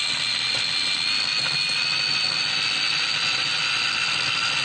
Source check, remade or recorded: recorded